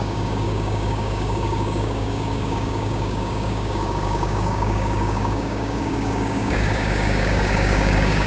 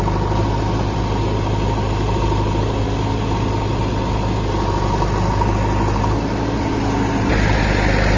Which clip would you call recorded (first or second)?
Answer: second